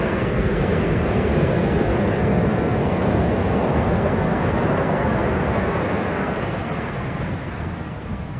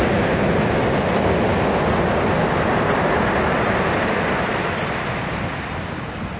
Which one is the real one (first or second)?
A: second